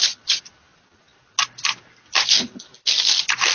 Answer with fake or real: real